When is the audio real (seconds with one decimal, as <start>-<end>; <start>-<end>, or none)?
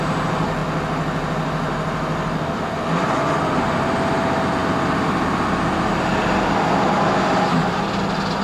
0.0-8.4